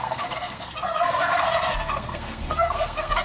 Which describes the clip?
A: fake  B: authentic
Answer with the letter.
A